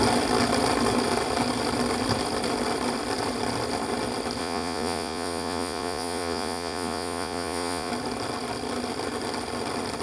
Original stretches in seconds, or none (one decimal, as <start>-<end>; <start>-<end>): 0.0-4.4; 7.9-10.0